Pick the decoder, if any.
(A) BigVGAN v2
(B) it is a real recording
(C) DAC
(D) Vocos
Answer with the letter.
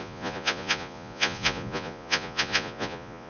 D